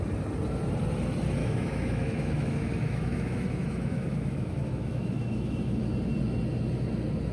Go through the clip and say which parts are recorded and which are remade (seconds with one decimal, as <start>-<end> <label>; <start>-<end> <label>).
0.0-1.4 recorded; 1.4-5.8 remade; 5.8-7.3 recorded